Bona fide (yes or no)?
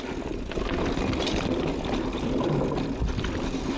yes